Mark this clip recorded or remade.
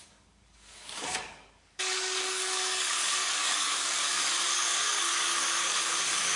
remade